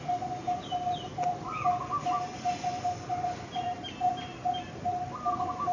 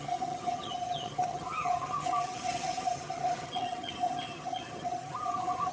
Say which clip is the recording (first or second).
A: first